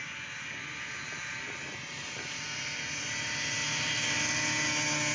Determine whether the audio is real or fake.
real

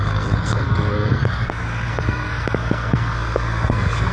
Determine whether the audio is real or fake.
fake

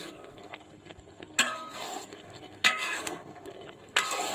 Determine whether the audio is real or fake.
fake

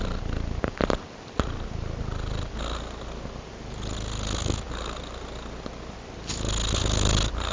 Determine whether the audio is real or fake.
real